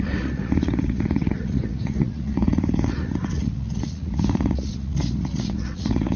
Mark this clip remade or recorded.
remade